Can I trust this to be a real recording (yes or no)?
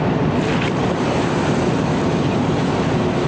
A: yes